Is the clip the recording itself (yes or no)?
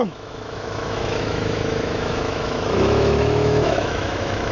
no